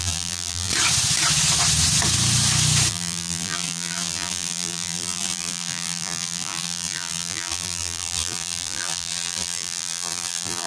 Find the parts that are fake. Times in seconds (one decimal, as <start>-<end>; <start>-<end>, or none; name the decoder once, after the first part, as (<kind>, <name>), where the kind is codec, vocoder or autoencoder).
0.0-0.7 (vocoder, BigVGAN v2); 2.9-10.7